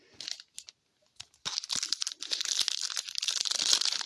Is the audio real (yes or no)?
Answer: yes